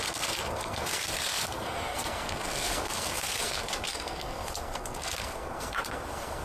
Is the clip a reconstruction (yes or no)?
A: yes